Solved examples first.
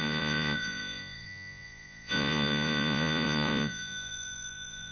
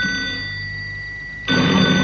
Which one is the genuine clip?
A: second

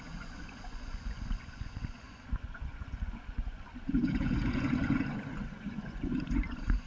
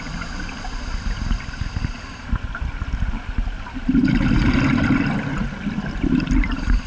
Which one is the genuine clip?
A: second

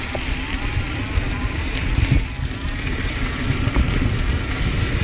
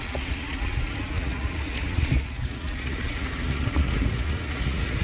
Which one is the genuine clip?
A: first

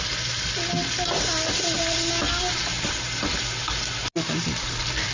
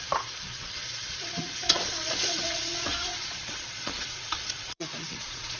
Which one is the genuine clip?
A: first